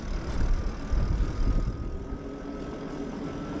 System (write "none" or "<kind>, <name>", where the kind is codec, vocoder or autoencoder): none